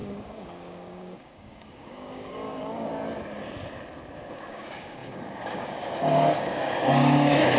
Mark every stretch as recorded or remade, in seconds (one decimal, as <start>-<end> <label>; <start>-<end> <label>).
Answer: 0.0-2.9 remade; 2.9-4.3 recorded; 4.3-7.6 remade